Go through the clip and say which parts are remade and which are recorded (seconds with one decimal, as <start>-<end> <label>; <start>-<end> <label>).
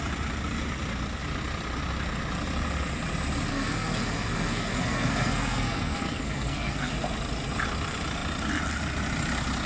0.0-3.5 recorded; 3.5-6.9 remade; 6.9-9.7 recorded